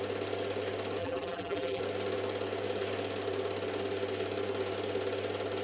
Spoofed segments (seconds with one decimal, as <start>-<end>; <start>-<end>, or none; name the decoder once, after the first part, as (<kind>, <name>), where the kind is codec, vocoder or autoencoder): 1.0-1.8 (vocoder, BigVGAN v2)

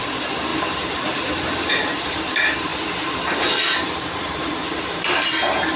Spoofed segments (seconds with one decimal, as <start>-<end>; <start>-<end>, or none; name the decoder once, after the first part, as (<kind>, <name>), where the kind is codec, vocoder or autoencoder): 0.0-0.5 (vocoder, BigVGAN v2); 1.7-2.7; 4.2-5.8

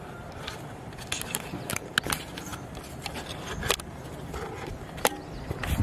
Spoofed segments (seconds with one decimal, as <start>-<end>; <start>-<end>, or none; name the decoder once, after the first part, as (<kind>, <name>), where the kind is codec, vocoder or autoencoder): none